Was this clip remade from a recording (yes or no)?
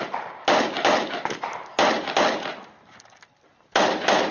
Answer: no